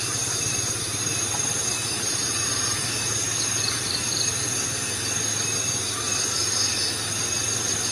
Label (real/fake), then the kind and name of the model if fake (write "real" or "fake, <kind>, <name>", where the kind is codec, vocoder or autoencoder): fake, vocoder, BigVGAN v2